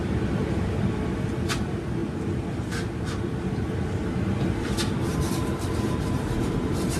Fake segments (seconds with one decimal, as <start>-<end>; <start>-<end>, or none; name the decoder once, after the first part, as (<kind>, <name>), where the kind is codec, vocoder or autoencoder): 1.6-7.0 (vocoder, BigVGAN v2)